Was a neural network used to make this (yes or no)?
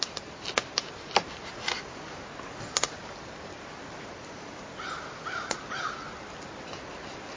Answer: no